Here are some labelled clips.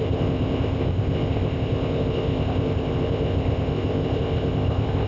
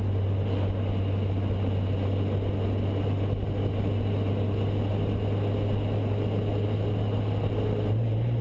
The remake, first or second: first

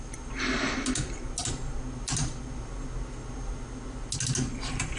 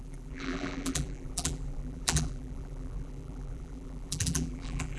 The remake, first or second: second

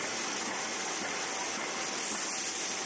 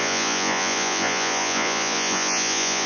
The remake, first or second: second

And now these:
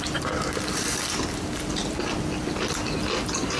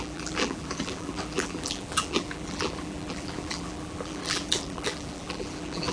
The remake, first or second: second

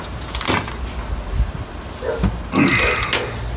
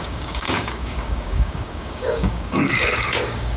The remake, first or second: second